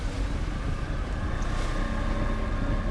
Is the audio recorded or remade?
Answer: recorded